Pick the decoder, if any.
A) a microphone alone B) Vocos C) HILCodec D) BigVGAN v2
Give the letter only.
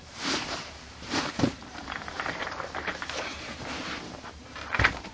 D